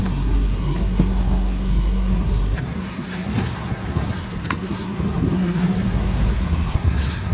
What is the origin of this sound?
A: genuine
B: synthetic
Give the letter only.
B